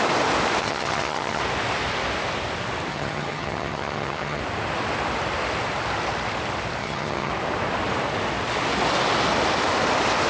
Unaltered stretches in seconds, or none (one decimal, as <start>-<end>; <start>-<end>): 0.0-0.6; 1.4-2.9; 4.4-6.8; 7.3-10.3